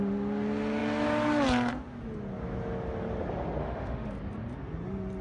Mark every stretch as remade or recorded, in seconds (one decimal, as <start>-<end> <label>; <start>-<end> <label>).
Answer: 0.0-3.6 recorded; 3.6-4.1 remade; 4.1-5.2 recorded